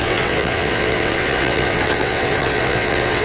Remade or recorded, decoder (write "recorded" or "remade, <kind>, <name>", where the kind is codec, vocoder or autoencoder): remade, vocoder, WaveNeXt